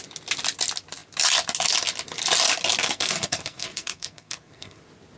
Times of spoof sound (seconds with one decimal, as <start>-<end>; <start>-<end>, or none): 2.8-4.8